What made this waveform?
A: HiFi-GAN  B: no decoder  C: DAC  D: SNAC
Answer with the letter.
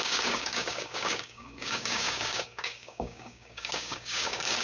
C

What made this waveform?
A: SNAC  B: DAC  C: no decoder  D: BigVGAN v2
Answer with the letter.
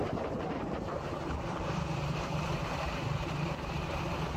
D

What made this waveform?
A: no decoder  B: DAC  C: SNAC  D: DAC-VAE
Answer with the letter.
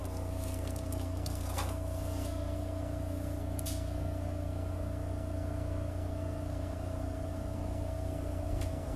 C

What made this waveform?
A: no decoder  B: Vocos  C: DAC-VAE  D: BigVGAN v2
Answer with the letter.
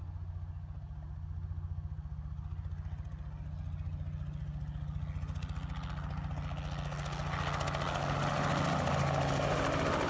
A